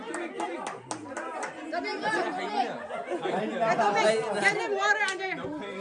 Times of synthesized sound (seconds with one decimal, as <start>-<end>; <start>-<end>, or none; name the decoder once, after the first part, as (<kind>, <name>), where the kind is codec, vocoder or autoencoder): none